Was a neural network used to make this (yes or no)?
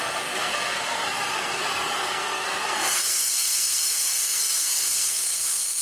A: yes